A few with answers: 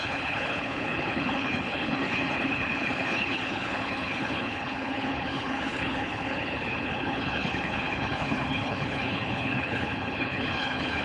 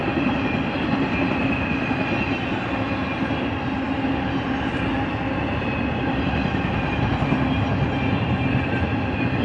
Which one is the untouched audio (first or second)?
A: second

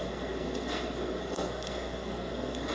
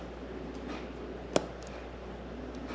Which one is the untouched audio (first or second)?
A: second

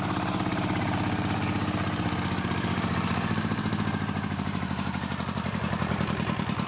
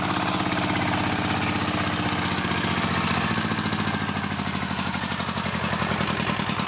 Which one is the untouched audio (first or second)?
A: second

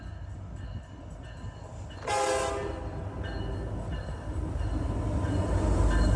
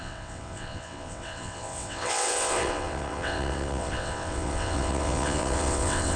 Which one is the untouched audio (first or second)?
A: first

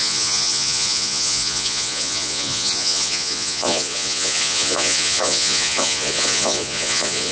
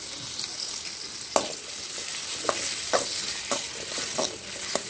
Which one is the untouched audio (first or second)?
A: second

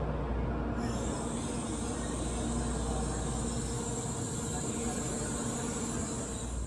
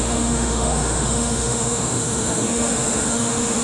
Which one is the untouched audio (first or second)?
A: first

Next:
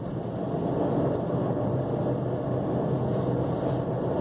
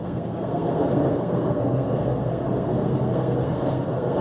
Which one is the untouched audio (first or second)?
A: first